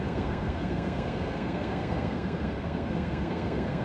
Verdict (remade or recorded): remade